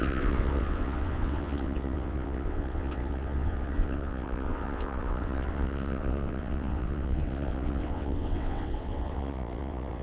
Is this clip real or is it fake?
fake